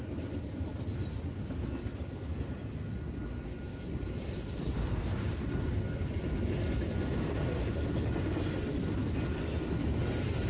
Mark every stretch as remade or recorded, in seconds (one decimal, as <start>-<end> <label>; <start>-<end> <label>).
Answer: 0.0-3.7 recorded; 3.7-5.6 remade; 5.6-9.8 recorded; 9.8-10.5 remade